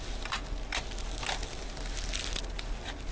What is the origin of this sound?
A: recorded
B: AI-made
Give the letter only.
A